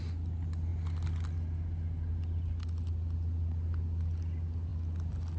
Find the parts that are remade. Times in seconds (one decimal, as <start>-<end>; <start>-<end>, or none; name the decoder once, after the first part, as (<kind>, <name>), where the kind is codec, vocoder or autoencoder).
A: none